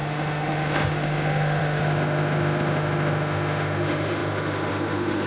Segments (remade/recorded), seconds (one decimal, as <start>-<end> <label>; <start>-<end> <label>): 0.0-5.3 remade